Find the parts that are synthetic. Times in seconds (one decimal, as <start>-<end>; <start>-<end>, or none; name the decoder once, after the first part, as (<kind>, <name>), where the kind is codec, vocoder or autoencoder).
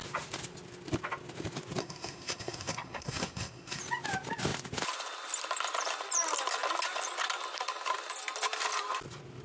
1.8-3.8 (codec, SNAC)